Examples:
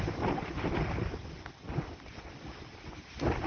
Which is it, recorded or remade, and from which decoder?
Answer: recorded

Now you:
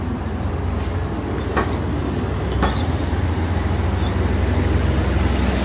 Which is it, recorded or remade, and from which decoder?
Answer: recorded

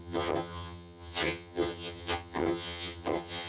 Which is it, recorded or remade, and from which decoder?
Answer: remade, vocoder, HiFi-GAN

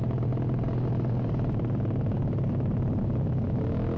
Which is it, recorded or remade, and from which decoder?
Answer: recorded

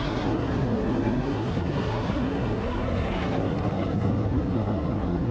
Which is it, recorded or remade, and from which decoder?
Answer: remade, codec, SNAC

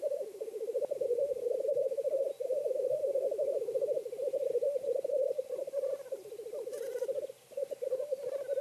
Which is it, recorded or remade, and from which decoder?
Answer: recorded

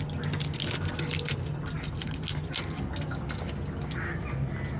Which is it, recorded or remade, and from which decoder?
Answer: recorded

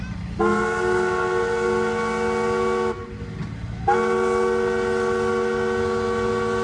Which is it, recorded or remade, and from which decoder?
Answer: recorded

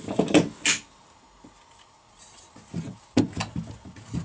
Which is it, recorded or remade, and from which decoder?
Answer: recorded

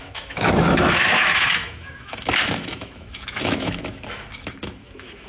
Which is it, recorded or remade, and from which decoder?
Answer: remade, autoencoder, DAC-VAE